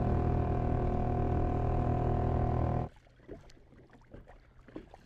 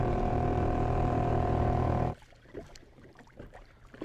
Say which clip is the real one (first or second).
first